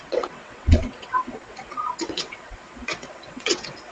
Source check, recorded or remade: remade